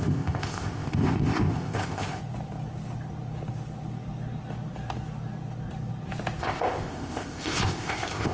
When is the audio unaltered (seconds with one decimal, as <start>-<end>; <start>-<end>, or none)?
2.2-6.4